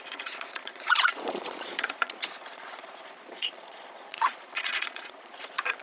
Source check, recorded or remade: remade